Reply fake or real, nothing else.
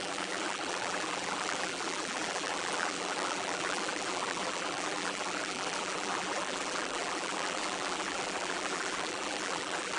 fake